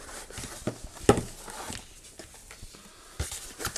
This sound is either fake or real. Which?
real